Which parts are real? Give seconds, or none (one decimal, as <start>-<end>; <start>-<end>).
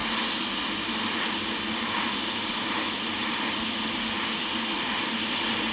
0.0-5.7